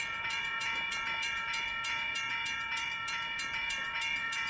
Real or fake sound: fake